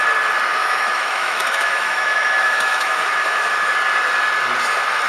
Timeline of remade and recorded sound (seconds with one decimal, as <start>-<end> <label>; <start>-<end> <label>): 0.0-0.6 recorded; 0.6-3.7 remade; 3.7-5.1 recorded